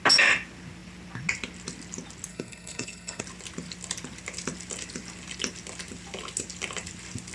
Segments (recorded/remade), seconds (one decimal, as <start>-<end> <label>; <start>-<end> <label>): 0.0-2.3 recorded; 2.3-3.2 remade; 3.2-7.3 recorded